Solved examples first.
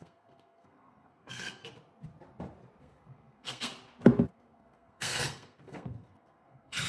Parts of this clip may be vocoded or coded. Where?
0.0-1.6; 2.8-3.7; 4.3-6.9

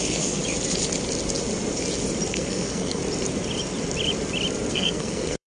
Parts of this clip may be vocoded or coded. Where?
0.0-0.4; 2.3-3.0; 4.7-5.6